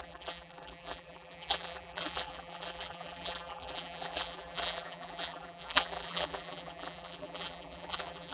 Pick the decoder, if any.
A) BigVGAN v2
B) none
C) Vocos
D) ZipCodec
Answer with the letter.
A